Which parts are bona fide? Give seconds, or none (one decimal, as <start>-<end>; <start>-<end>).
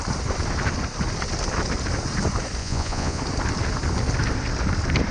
0.0-2.6; 3.2-5.1